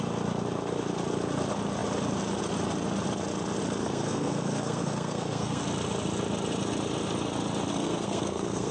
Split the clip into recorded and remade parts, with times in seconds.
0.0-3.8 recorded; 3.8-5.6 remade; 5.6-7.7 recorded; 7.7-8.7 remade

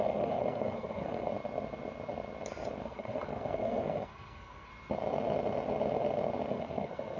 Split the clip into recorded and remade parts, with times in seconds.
0.0-1.3 remade; 1.3-2.8 recorded; 2.8-4.7 remade; 4.7-6.5 recorded; 6.5-7.2 remade

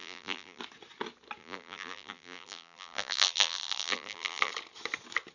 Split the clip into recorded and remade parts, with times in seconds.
0.0-0.6 remade; 0.6-1.4 recorded; 1.4-4.5 remade; 4.5-5.3 recorded